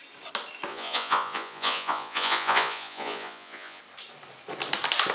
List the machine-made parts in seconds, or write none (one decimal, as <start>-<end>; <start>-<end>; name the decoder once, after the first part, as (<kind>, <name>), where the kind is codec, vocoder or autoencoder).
0.7-3.8 (vocoder, Vocos)